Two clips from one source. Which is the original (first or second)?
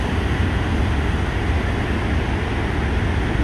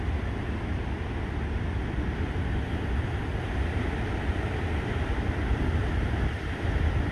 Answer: first